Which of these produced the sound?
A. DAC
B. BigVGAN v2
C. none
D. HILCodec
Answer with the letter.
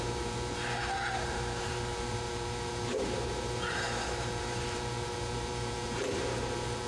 B